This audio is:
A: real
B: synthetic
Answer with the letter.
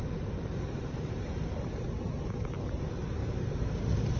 A